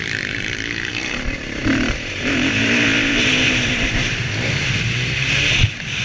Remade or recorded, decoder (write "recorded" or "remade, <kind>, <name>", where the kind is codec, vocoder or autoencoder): remade, vocoder, BigVGAN v2